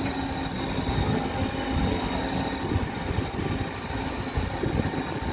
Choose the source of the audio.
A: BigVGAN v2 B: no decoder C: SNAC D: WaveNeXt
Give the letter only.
B